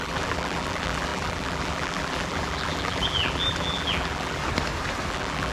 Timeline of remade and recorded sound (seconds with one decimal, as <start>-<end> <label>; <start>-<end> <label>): 0.0-4.4 remade; 4.4-5.1 recorded; 5.1-5.5 remade